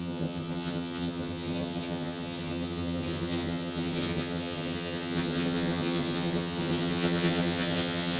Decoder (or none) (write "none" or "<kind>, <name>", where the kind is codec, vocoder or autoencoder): vocoder, HiFi-GAN